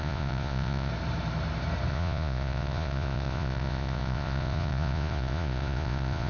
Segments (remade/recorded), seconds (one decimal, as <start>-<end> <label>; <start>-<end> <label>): 0.0-0.9 remade; 0.9-1.9 recorded; 1.9-6.3 remade